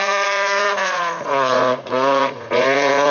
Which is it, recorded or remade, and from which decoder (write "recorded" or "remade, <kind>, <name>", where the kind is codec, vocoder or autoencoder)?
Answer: remade, vocoder, Vocos